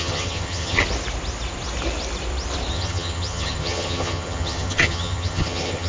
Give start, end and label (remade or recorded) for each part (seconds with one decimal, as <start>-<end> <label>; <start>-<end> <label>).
0.0-0.8 remade; 0.8-2.7 recorded; 2.7-5.9 remade